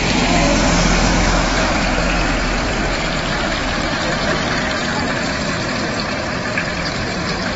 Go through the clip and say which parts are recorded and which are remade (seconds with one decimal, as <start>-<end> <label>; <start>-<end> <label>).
0.0-1.0 recorded; 1.0-1.7 remade; 1.7-7.6 recorded